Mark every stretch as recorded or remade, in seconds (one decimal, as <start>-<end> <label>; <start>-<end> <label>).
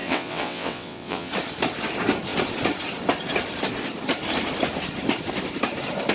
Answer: 0.0-1.3 remade; 1.3-6.1 recorded